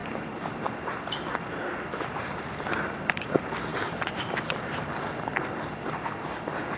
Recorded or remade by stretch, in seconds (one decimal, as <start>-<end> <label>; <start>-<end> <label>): 0.0-3.7 recorded; 3.7-4.7 remade; 4.7-6.8 recorded